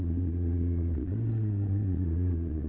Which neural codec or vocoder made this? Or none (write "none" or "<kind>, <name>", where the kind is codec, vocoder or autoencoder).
vocoder, Vocos